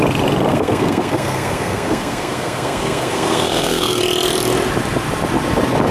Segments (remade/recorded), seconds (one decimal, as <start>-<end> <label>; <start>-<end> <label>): 0.0-0.5 recorded; 0.5-4.0 remade; 4.0-5.9 recorded